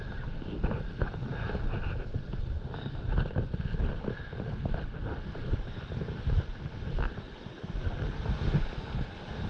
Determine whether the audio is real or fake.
real